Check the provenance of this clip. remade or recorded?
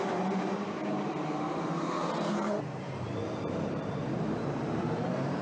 remade